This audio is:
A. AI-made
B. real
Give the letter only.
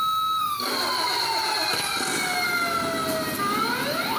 B